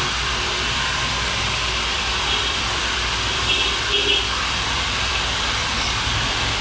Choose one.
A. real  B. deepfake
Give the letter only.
B